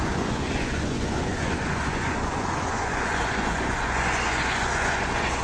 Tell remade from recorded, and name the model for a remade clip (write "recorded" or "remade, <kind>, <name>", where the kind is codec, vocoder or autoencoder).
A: remade, vocoder, Vocos